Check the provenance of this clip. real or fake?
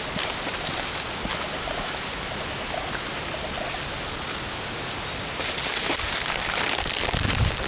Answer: real